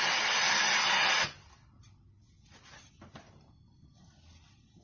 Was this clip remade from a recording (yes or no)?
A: no